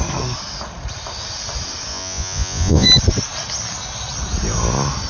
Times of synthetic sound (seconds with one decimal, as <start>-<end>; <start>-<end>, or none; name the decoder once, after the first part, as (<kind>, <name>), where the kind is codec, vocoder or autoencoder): 1.9-2.9 (vocoder, Vocos)